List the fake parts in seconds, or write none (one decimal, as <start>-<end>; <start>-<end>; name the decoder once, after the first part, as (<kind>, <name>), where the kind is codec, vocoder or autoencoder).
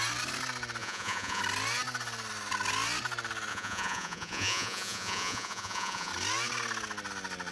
0.8-1.4 (vocoder, Vocos); 3.5-6.1